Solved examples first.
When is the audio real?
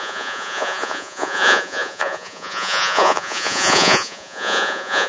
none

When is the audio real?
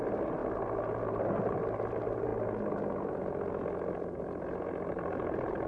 0.4-1.0; 2.3-4.9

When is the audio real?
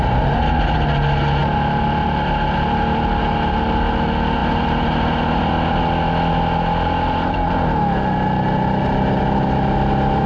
0.0-10.3